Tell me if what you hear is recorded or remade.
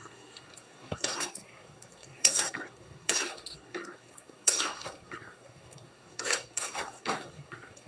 remade